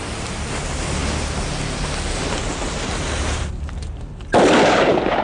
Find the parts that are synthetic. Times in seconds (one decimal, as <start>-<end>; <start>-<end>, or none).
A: none